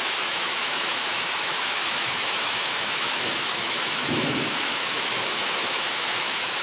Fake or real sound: fake